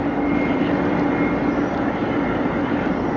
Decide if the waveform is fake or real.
real